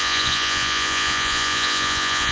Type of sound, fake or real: fake